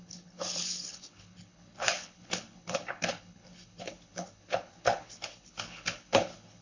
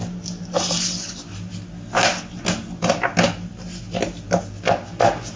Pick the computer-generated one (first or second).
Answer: first